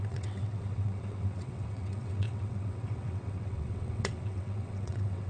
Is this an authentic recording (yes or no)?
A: no